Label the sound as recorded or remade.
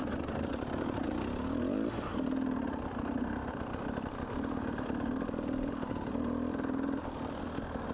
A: recorded